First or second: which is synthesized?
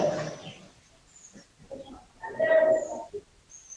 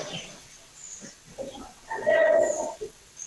second